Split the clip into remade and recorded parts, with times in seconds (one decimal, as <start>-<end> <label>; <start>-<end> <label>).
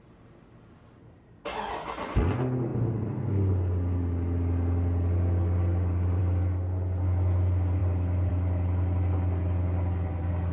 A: 0.0-10.5 recorded